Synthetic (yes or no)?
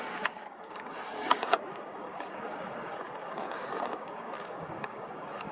yes